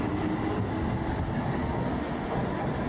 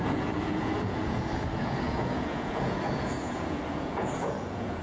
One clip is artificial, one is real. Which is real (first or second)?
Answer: first